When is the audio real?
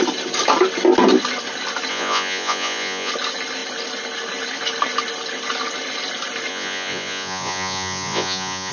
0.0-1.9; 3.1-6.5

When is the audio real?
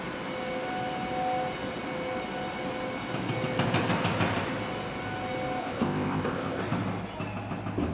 0.0-5.6; 6.6-7.9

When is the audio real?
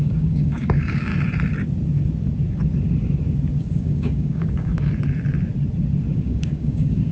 1.1-3.6; 4.7-6.1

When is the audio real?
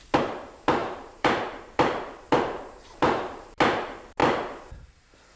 0.0-0.8; 3.6-5.4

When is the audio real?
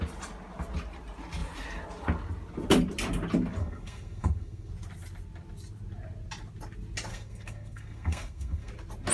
0.0-3.6; 4.7-7.1; 8.7-9.1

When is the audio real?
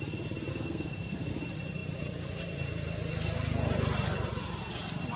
0.0-0.5; 1.3-5.2